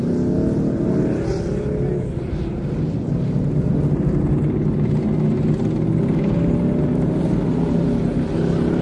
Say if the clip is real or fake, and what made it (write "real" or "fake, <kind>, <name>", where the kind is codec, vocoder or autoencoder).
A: real